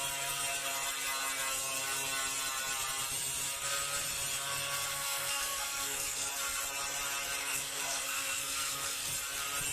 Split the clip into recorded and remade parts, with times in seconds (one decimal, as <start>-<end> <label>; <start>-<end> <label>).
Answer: 0.0-4.9 recorded; 4.9-6.3 remade; 6.3-7.4 recorded; 7.4-9.1 remade; 9.1-9.7 recorded